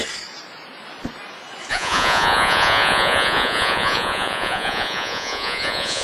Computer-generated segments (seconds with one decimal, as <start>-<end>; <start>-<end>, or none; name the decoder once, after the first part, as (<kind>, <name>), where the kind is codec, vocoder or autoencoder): 1.7-6.0 (vocoder, Vocos)